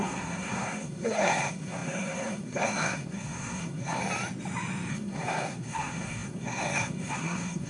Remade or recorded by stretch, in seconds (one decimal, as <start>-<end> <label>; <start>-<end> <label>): 0.0-4.0 remade; 4.0-4.9 recorded; 4.9-7.7 remade